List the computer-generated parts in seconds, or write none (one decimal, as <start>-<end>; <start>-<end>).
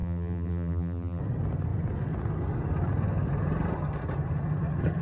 0.0-1.2